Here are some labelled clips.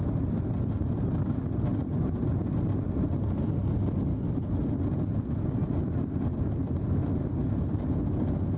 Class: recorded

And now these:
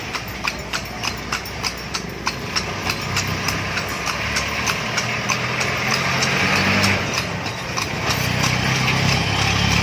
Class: recorded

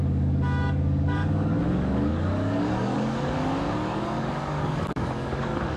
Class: remade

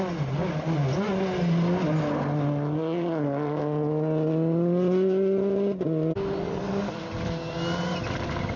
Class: recorded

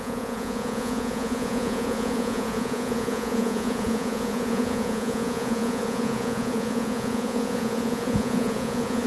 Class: remade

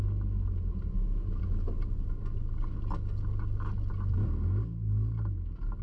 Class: recorded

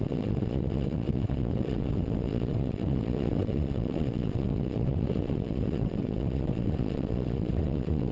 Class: remade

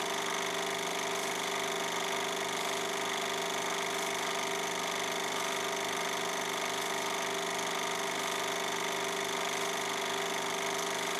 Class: recorded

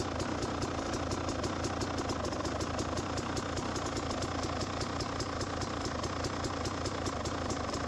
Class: recorded